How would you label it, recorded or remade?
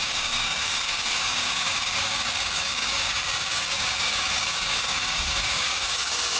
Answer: remade